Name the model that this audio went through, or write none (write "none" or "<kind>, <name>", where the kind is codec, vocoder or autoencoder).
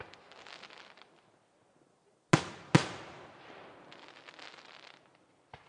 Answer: none